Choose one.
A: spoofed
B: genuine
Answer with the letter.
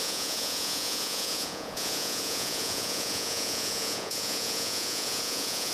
A